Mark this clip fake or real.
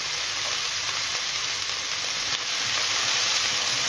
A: real